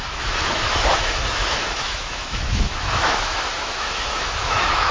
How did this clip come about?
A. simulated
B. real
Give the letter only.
A